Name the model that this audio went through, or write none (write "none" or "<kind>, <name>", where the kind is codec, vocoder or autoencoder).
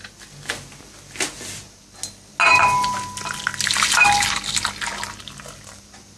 none